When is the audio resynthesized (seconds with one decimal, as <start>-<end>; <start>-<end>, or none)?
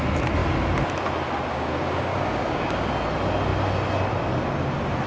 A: 1.5-2.9